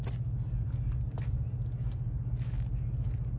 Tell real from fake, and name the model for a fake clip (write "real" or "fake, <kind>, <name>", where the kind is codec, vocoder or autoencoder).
real